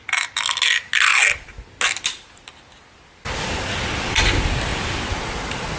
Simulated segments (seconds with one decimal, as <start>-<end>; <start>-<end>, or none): none